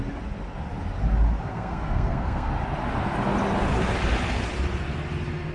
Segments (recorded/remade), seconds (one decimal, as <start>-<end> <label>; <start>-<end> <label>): 0.0-1.5 recorded; 1.5-2.5 remade; 2.5-5.5 recorded

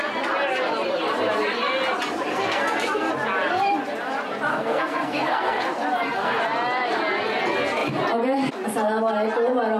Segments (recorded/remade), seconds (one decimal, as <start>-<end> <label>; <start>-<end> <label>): 0.0-2.3 recorded; 2.3-3.1 remade; 3.1-4.5 recorded; 4.5-6.4 remade; 6.4-9.8 recorded

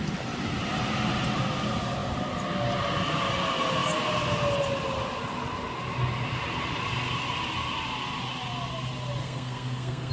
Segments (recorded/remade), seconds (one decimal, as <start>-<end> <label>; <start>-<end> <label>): 0.0-9.2 recorded; 9.2-10.1 remade

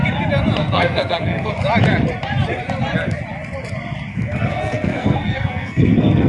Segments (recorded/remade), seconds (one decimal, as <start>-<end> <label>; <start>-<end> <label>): 0.0-0.6 recorded; 0.6-1.5 remade; 1.5-4.1 recorded; 4.1-6.3 remade

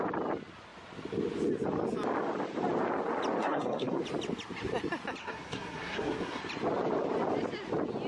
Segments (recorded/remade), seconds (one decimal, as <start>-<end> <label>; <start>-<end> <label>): 0.0-3.4 recorded; 3.4-4.0 remade; 4.0-5.2 recorded; 5.2-6.4 remade; 6.4-8.1 recorded

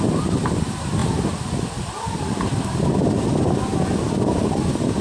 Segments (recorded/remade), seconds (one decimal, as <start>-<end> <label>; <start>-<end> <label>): 0.0-5.0 recorded